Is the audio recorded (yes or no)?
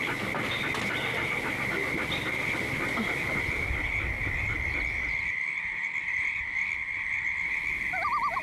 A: yes